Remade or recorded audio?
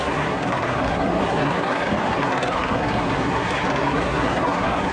remade